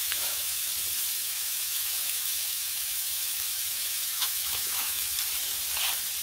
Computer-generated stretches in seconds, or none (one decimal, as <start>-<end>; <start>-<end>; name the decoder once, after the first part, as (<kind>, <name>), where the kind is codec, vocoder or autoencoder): 0.0-0.7 (autoencoder, DAC-VAE); 1.2-5.1